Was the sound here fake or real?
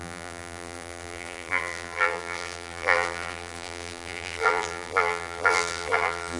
fake